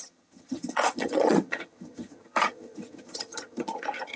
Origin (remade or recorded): remade